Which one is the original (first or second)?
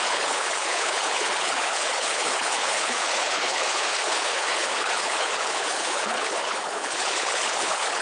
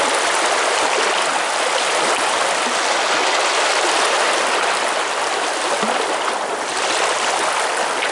second